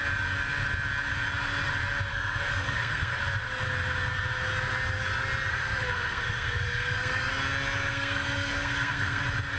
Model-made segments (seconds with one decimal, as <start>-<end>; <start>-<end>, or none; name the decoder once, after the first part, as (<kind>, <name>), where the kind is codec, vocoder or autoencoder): 2.1-3.2 (codec, SNAC); 5.5-7.3; 7.9-9.2